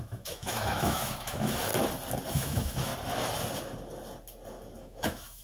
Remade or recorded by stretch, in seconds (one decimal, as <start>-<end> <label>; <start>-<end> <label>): 0.0-1.7 remade; 1.7-2.3 recorded; 2.3-2.9 remade; 2.9-4.8 recorded; 4.8-5.4 remade